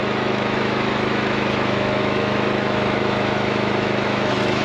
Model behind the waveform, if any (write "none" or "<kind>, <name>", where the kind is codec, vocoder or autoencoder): autoencoder, DAC-VAE